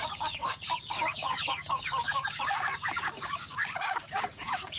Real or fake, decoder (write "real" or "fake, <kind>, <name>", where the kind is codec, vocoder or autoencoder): fake, codec, DAC